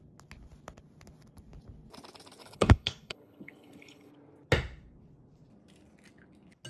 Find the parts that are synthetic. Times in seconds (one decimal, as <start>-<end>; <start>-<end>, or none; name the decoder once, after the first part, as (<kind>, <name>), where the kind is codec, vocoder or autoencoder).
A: 2.4-4.1 (codec, HILCodec)